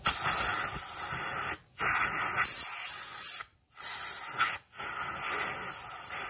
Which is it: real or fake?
real